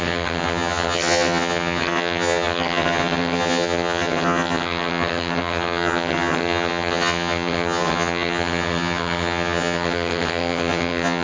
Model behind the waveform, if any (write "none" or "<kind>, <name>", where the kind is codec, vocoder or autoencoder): vocoder, HiFi-GAN